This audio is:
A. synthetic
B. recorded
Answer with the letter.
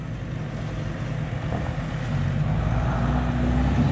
B